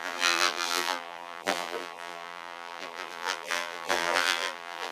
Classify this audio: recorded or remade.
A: remade